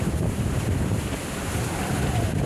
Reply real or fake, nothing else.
real